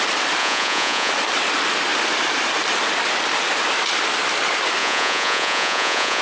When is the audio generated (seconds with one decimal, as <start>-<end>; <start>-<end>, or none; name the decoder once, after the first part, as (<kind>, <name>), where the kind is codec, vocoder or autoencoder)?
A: 0.4-1.1 (vocoder, Vocos); 4.8-6.2